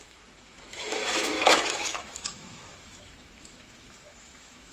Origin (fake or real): fake